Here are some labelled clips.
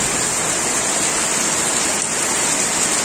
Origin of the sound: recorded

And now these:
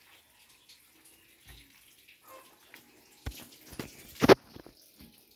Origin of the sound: recorded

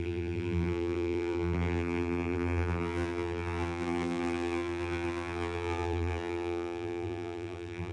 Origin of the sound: remade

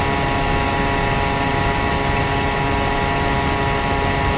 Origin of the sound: recorded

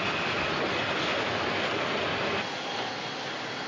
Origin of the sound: remade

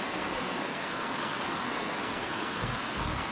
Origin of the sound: remade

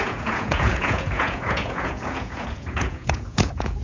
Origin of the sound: remade